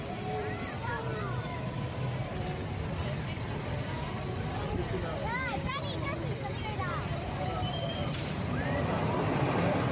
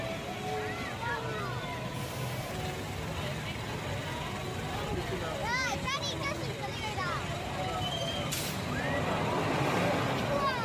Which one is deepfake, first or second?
first